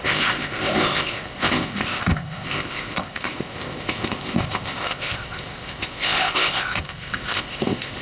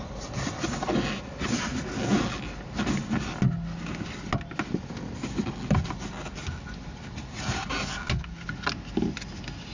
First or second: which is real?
second